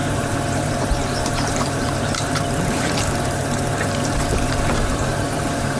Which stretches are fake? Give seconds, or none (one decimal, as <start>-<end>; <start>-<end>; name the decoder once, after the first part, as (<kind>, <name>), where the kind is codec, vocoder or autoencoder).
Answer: 0.0-5.8 (vocoder, BigVGAN v2)